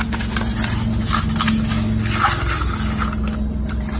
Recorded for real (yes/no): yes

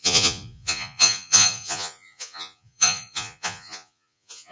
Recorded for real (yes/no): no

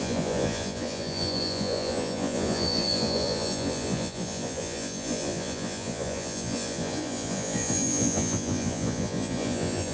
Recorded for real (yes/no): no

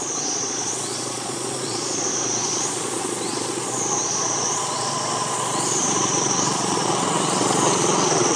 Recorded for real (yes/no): no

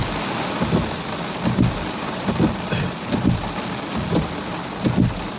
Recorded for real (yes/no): yes